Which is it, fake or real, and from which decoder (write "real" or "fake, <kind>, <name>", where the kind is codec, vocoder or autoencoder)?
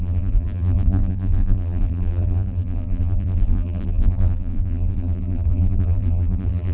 fake, vocoder, BigVGAN v2